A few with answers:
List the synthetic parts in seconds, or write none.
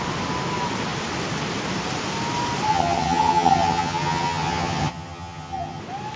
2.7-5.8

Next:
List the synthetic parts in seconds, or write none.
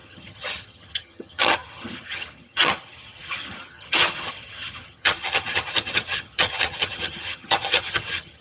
0.0-8.4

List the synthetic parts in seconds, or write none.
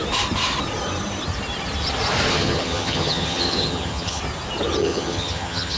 2.3-4.2; 4.8-5.8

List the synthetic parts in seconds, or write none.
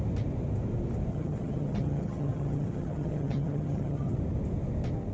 1.1-4.2